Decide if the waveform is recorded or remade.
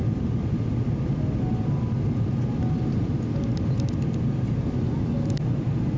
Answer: recorded